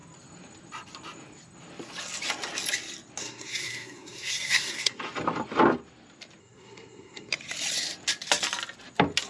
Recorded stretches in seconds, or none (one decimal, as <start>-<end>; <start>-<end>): 0.0-3.2; 5.0-6.4; 7.3-9.3